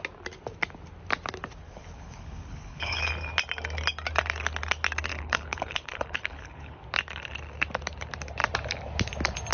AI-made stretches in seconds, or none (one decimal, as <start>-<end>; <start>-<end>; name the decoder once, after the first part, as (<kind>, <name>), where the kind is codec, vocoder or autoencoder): 1.6-3.0 (codec, HILCodec); 5.1-6.8